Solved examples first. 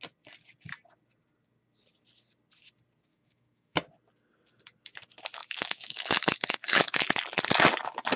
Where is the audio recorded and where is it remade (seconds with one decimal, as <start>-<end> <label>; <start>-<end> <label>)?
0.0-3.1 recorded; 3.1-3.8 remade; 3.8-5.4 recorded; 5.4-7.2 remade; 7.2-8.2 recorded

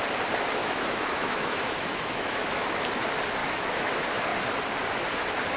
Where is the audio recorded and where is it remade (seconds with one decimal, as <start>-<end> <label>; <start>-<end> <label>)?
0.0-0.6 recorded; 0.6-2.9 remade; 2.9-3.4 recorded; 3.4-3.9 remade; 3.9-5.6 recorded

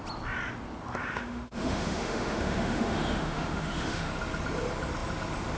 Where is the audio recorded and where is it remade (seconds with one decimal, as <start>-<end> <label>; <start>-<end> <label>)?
0.0-1.0 recorded; 1.0-4.1 remade; 4.1-5.6 recorded

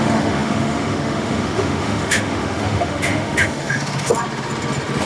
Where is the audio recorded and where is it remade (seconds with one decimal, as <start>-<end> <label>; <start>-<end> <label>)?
0.0-4.1 remade; 4.1-5.1 recorded